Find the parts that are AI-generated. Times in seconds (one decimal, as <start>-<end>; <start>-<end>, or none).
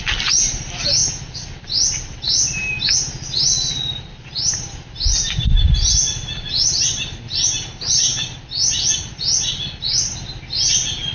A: none